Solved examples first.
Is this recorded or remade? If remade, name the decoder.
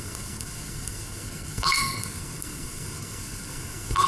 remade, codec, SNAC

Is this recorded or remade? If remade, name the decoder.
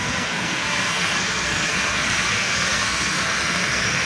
remade, codec, SNAC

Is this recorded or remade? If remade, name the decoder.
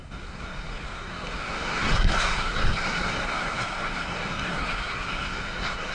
remade, codec, SNAC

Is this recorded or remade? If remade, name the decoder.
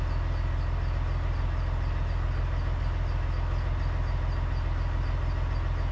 recorded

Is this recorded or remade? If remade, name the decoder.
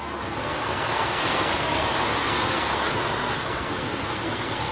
remade, codec, SNAC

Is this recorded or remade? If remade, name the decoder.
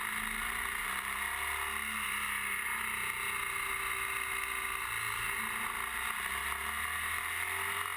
recorded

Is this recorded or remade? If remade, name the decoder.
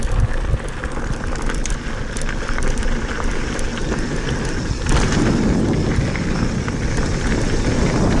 recorded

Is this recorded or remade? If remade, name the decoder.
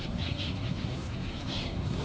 remade, codec, SNAC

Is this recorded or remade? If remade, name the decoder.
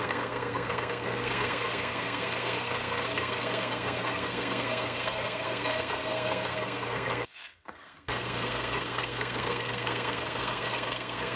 remade, codec, SNAC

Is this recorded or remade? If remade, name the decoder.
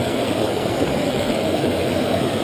remade, codec, SNAC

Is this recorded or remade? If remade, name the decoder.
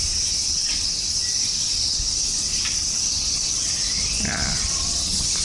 recorded